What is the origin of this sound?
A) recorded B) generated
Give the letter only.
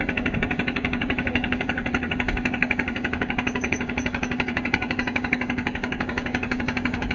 B